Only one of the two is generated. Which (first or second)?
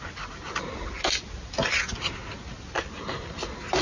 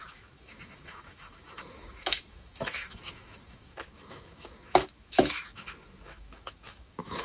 second